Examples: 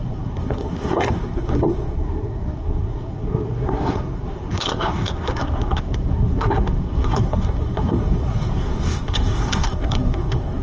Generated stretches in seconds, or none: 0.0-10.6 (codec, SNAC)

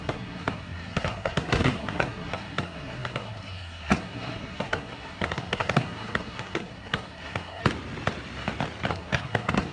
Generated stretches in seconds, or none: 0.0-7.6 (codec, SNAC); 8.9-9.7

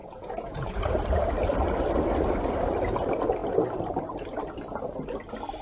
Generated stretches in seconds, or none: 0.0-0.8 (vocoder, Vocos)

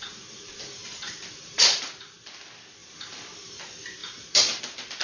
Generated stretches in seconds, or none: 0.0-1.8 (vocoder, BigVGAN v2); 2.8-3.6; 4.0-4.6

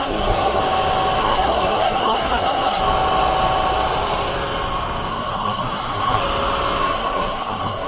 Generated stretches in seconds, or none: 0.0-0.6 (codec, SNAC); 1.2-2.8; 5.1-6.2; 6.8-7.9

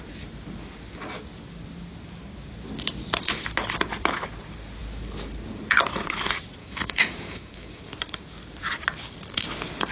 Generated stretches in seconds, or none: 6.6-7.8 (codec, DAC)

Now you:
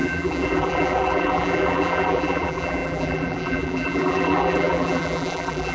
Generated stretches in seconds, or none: 0.0-5.7 (vocoder, BigVGAN v2)